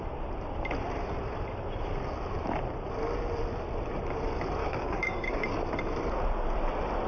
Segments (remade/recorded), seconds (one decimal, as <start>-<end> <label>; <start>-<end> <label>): 0.0-4.6 recorded; 4.6-5.6 remade; 5.6-7.1 recorded